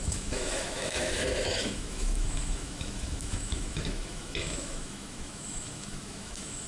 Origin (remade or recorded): remade